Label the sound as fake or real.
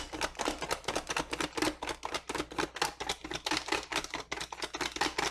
real